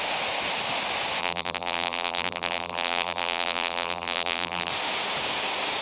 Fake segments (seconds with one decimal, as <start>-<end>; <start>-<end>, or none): 1.2-4.7